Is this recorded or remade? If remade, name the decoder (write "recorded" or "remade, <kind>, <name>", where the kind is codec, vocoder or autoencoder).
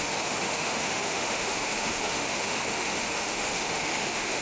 remade, autoencoder, DAC-VAE